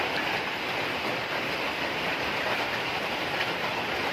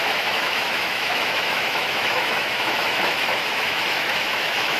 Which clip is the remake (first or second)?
second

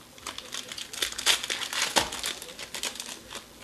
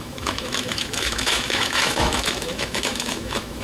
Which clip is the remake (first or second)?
second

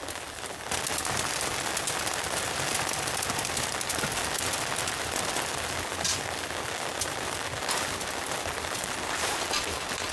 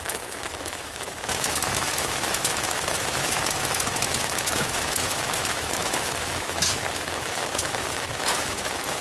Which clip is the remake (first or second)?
second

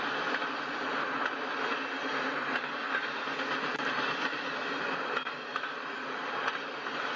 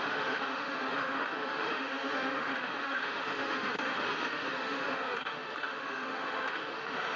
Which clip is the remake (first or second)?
second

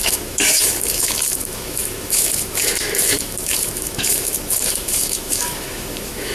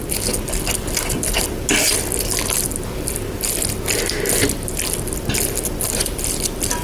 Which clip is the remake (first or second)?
first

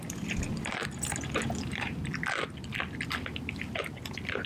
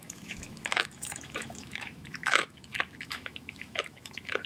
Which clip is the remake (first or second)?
second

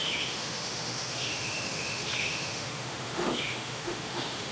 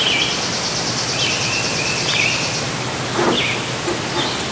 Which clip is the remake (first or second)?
first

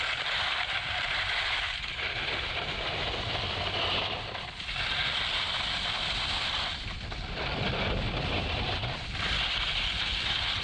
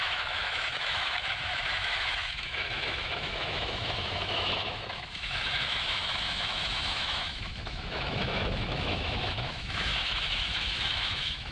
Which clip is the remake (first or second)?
second